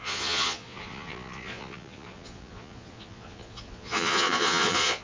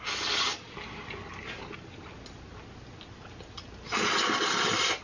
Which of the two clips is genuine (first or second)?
second